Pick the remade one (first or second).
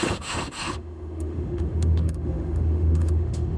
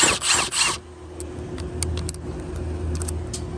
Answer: first